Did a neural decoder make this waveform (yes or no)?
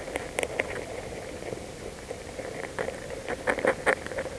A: no